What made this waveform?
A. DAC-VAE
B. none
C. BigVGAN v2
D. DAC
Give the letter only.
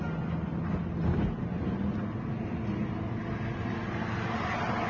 B